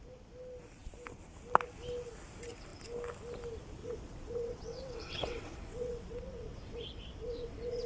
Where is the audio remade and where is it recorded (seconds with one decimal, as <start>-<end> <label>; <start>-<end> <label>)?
0.0-3.8 recorded; 3.8-7.9 remade